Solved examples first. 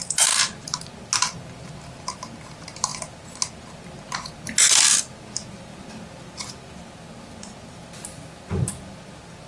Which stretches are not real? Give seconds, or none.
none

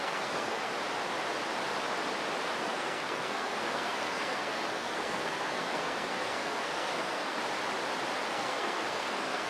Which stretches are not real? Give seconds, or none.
0.0-0.7 (codec, SNAC); 2.6-7.4; 8.3-9.5

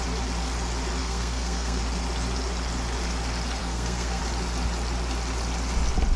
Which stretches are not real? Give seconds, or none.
1.0-1.8 (codec, SNAC); 3.6-4.2